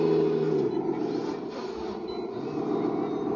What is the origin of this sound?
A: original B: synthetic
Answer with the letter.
A